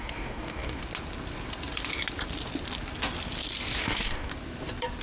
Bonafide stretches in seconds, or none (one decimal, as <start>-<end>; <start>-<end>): 0.8-3.8; 4.3-5.0